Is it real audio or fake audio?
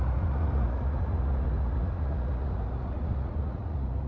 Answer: fake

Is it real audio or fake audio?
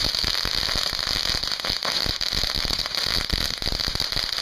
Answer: real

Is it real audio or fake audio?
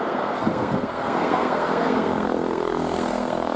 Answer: fake